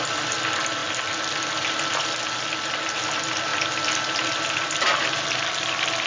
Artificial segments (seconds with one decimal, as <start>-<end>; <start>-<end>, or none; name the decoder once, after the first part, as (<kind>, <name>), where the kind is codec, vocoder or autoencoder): none